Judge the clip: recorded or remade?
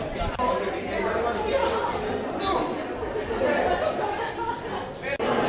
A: recorded